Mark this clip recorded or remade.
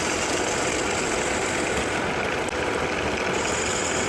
recorded